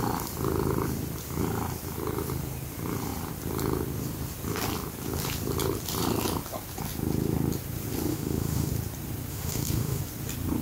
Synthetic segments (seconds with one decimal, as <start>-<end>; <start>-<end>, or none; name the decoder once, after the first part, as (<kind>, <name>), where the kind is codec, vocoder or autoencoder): 8.1-8.7 (autoencoder, DAC-VAE); 9.3-10.0